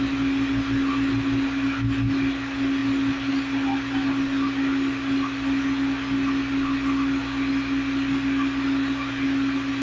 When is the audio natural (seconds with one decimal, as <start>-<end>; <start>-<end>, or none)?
0.0-9.8